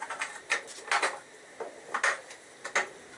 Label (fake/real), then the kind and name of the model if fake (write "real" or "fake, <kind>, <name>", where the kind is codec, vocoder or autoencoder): real